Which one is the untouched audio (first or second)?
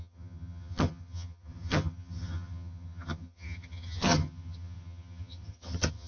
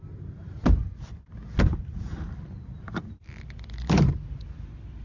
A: second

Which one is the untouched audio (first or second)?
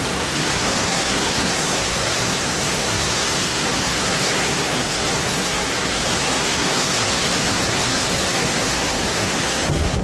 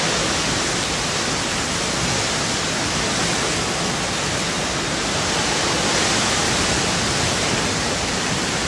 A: second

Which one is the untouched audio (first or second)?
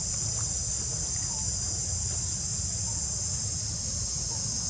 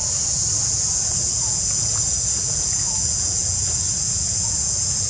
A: first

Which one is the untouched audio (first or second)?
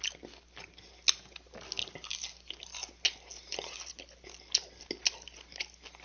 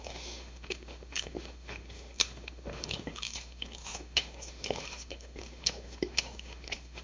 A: first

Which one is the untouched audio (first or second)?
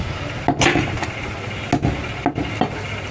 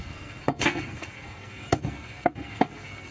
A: first